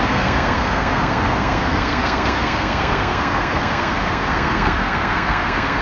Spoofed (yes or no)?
yes